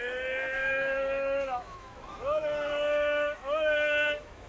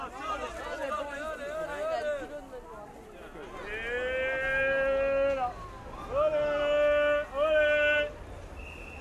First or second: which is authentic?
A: second